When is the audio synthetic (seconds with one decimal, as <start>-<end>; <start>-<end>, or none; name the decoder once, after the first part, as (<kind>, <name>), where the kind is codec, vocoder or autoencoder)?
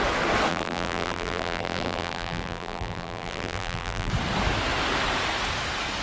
0.5-4.1 (vocoder, BigVGAN v2)